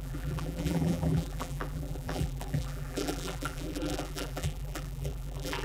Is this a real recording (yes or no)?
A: no